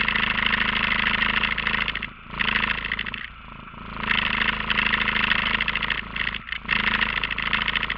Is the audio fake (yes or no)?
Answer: no